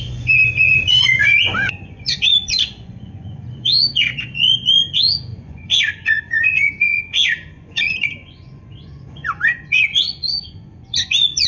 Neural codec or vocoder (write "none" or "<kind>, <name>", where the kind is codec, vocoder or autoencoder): vocoder, Vocos